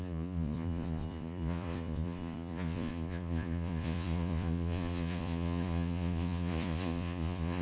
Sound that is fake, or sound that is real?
fake